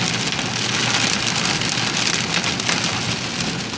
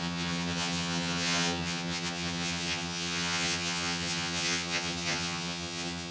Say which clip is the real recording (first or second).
first